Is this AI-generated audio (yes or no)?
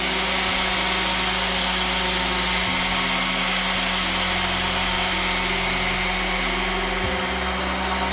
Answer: no